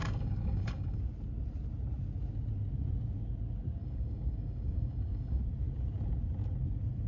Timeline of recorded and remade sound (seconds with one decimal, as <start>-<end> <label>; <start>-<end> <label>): 0.0-1.0 remade; 1.0-3.8 recorded; 3.8-5.4 remade; 5.4-7.1 recorded